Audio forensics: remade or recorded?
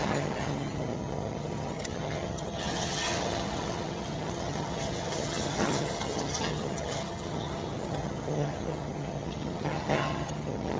remade